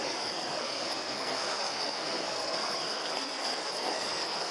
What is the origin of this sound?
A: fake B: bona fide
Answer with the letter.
A